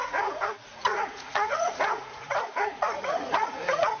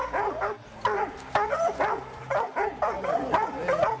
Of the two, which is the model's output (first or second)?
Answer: first